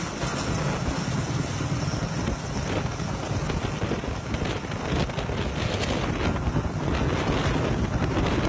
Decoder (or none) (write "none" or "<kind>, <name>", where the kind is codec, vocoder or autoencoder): none